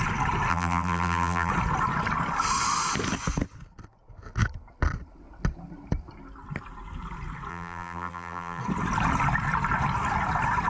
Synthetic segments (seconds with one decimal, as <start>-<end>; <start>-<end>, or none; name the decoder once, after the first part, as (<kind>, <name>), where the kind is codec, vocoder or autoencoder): 0.5-1.5 (vocoder, BigVGAN v2); 7.5-8.6

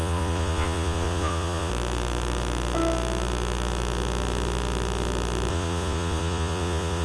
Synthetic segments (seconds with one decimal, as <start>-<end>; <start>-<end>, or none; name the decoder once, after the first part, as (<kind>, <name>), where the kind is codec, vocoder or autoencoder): 0.0-1.7 (vocoder, Vocos); 5.5-7.0

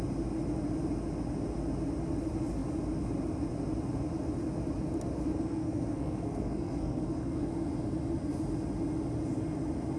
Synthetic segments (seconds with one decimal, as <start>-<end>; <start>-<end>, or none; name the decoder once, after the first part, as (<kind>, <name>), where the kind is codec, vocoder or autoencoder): 5.3-7.5 (codec, SNAC)

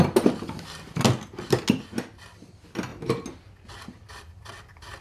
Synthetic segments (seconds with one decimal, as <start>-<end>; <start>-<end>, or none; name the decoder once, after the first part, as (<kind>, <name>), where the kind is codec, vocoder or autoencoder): none

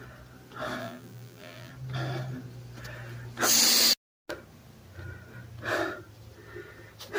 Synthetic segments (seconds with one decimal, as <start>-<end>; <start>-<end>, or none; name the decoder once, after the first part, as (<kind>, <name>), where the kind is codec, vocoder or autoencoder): 0.8-1.7 (vocoder, BigVGAN v2)

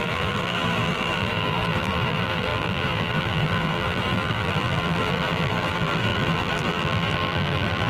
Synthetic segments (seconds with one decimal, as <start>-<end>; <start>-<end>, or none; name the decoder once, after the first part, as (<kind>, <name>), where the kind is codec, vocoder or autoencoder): 0.0-7.9 (vocoder, BigVGAN v2)

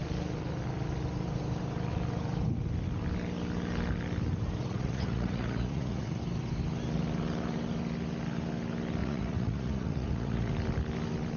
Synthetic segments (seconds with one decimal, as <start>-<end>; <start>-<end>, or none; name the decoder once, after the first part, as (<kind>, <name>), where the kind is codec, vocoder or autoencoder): 4.6-6.2 (vocoder, Vocos); 9.0-10.5

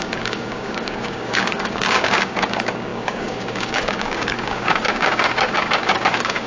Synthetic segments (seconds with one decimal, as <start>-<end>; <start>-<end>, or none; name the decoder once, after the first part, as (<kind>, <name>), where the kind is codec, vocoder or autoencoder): 0.0-6.5 (codec, DAC)